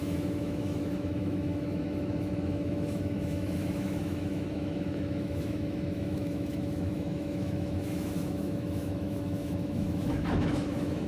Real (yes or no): no